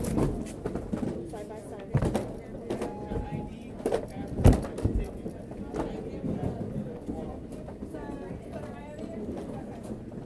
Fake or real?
real